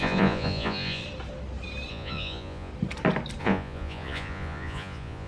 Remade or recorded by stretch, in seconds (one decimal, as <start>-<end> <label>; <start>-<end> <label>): 0.0-1.0 remade; 1.0-1.9 recorded; 1.9-2.7 remade; 2.7-3.4 recorded; 3.4-5.3 remade

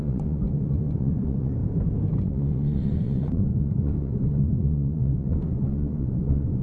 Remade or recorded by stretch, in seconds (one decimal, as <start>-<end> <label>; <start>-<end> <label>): 0.0-1.6 remade; 1.6-2.2 recorded; 2.2-6.6 remade

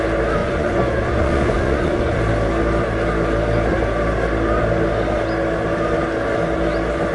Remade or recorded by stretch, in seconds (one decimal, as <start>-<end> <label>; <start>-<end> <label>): 0.0-0.4 recorded; 0.4-2.2 remade; 2.2-7.1 recorded

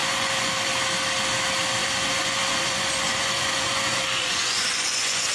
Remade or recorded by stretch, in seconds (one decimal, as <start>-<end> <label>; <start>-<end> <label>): 0.0-0.7 remade; 0.7-1.8 recorded; 1.8-5.3 remade